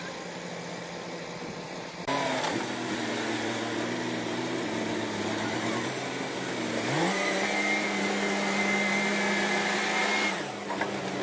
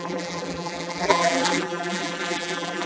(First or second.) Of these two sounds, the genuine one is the first